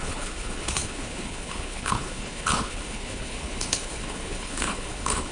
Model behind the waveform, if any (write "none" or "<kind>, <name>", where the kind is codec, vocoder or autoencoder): codec, HILCodec